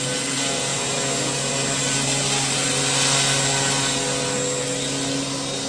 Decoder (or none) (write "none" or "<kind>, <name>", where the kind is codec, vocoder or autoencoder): none